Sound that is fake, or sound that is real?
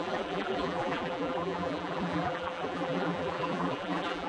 fake